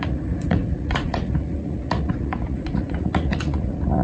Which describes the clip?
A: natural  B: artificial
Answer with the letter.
B